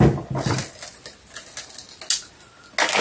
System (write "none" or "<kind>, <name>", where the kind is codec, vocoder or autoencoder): none